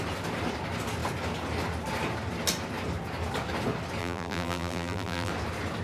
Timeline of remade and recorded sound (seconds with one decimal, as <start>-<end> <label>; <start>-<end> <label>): 0.0-4.0 recorded; 4.0-5.3 remade; 5.3-5.8 recorded